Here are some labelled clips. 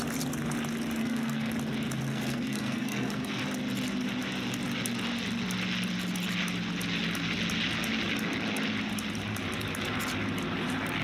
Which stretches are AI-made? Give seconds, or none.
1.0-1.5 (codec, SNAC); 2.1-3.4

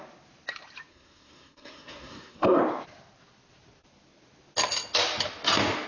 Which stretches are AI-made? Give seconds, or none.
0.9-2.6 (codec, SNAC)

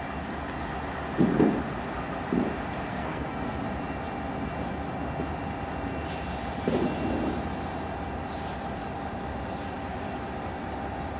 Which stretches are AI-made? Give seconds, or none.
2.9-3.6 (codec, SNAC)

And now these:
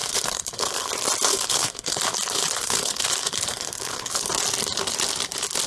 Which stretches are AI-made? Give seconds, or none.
0.0-0.9 (codec, SNAC); 1.3-2.0; 2.6-4.3

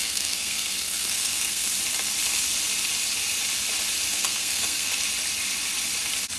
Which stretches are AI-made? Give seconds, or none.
0.0-1.7 (codec, SNAC); 4.1-4.9

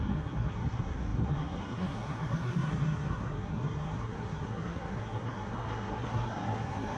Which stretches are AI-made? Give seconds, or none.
0.0-7.0 (codec, SNAC)

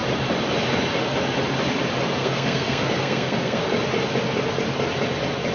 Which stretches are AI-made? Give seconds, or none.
2.2-3.7 (codec, SNAC)